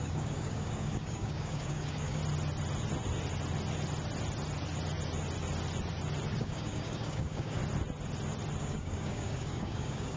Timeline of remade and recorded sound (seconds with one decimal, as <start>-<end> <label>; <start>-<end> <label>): 0.0-2.2 remade; 2.2-6.4 recorded; 6.4-7.6 remade; 7.6-8.6 recorded; 8.6-10.2 remade